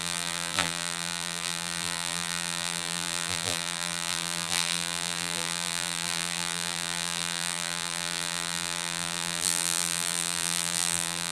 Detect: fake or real fake